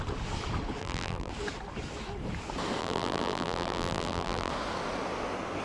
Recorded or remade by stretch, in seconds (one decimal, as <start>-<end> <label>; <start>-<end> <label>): 0.0-0.8 recorded; 0.8-1.3 remade; 1.3-2.8 recorded; 2.8-4.5 remade; 4.5-5.6 recorded